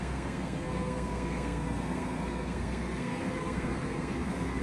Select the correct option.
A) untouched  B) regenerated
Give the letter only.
B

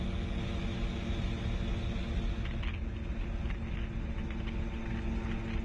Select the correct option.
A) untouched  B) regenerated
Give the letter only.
A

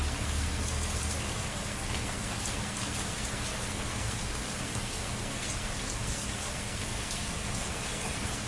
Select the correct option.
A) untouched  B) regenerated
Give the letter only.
B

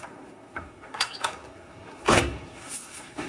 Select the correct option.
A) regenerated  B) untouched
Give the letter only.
A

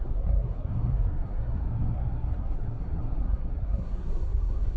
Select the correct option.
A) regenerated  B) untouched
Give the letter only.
A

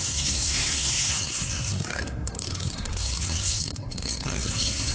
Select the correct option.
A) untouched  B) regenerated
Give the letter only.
B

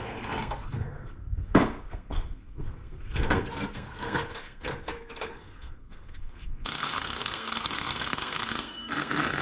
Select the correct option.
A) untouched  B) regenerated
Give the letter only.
B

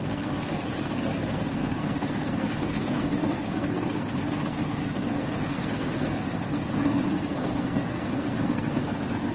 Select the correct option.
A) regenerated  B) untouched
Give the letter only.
A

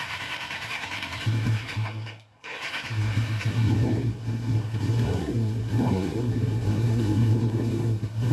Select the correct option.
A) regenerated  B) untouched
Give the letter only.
A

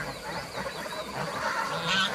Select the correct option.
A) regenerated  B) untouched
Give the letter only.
B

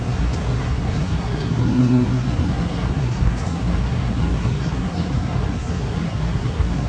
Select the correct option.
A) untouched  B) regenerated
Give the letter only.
B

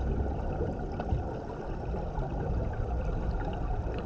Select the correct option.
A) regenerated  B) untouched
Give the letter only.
B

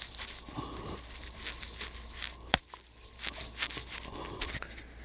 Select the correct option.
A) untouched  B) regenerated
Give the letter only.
A